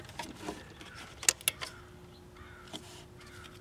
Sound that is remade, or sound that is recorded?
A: recorded